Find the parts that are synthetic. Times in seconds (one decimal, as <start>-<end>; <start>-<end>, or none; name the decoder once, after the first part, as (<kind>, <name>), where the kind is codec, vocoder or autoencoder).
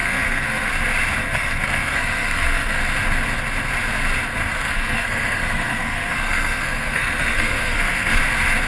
0.0-0.7 (codec, SNAC); 1.2-2.8; 4.4-8.2